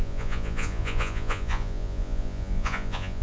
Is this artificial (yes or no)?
yes